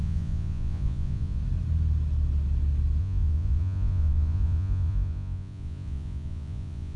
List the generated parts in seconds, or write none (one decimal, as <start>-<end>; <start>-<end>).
0.0-1.4; 3.0-7.0